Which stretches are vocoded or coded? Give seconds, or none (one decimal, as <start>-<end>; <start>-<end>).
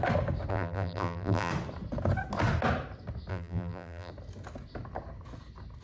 0.5-1.5; 3.3-4.1